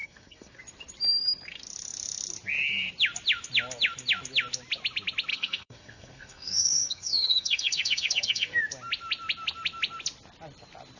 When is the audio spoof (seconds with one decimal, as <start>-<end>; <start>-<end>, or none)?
0.0-0.6; 5.3-8.6